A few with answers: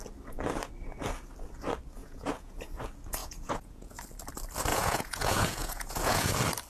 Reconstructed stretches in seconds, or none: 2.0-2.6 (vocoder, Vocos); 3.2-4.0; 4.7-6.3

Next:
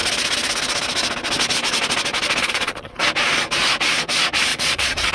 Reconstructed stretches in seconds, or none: 2.4-3.0 (vocoder, Vocos); 4.5-5.1

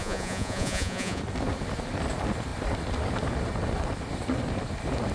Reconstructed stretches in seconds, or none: 0.0-1.2 (vocoder, Vocos)

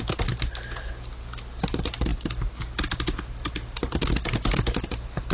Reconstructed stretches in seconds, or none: none

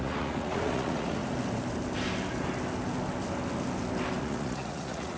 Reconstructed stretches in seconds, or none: 0.0-1.2 (vocoder, Vocos); 4.2-5.2

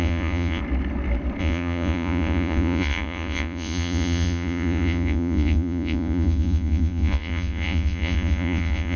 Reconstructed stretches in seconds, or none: 0.0-0.6 (vocoder, Vocos); 1.4-9.0

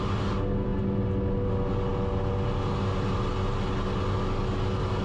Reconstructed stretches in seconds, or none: none

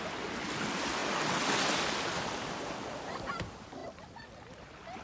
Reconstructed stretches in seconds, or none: none